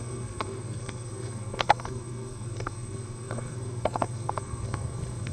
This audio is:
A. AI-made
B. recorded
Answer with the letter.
A